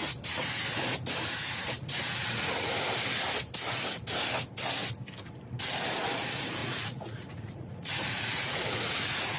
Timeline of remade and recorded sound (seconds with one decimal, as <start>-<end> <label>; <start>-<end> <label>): 0.0-6.6 recorded; 6.6-9.4 remade